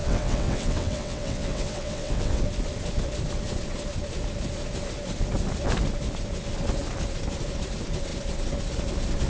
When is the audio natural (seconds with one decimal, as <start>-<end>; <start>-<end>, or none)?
2.4-9.3